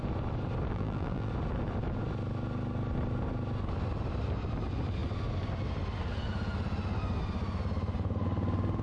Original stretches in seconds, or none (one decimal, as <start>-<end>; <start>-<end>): 0.0-0.7; 1.3-8.8